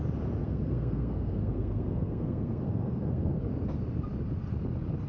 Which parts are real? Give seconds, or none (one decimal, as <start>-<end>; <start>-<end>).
0.0-0.4; 3.5-5.1